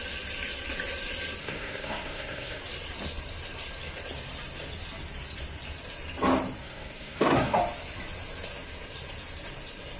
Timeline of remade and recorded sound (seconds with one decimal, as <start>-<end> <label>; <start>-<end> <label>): 0.0-1.4 recorded; 1.4-2.6 remade; 2.6-6.6 recorded; 6.6-7.6 remade; 7.6-10.0 recorded